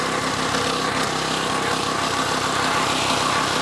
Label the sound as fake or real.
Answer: real